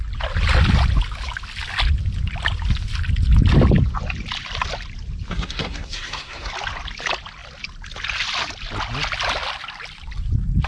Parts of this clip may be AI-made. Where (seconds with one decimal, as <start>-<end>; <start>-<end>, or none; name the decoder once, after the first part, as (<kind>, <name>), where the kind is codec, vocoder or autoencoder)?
5.3-6.5 (codec, SNAC)